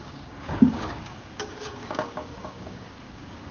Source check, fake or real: fake